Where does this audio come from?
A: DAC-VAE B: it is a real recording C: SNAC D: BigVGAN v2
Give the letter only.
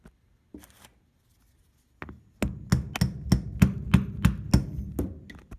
B